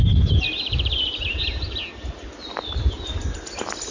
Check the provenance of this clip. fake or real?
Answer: real